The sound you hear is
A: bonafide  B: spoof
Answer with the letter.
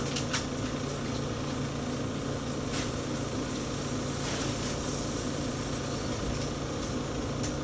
A